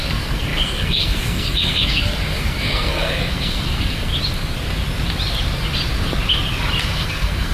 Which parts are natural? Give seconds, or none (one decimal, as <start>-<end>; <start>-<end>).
4.1-6.8